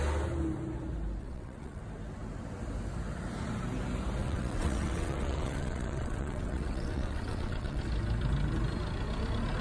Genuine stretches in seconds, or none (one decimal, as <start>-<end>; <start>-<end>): 0.0-1.2; 1.8-4.2; 7.8-9.6